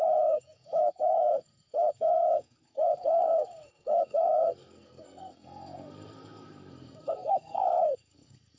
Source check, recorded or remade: remade